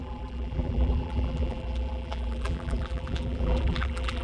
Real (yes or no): no